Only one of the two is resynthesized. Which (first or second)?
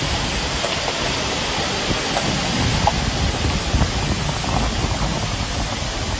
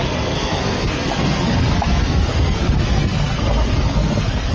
second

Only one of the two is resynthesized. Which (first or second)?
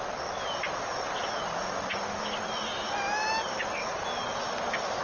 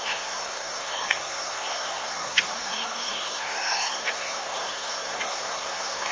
second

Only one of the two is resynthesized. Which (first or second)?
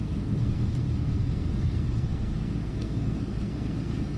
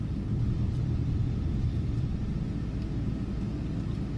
first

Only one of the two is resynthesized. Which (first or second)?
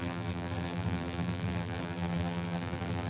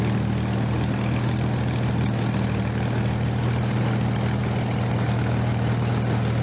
first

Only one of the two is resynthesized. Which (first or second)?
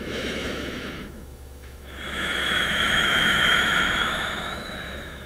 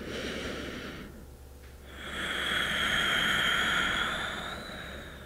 first